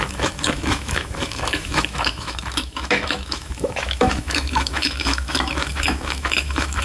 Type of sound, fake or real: fake